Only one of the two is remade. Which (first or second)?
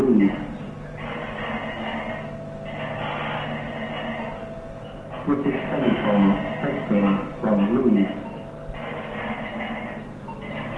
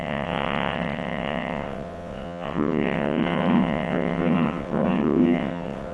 second